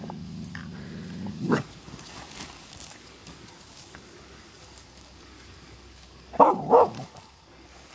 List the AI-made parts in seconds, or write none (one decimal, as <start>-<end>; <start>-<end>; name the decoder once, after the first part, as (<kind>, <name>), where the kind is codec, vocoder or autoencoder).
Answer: 0.0-0.6 (codec, DAC); 1.3-7.9